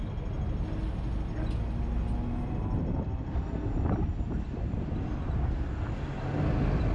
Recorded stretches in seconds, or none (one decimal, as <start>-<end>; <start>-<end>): 0.0-6.9